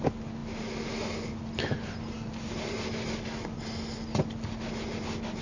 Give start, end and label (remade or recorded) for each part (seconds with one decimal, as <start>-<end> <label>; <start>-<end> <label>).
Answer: 0.0-5.4 recorded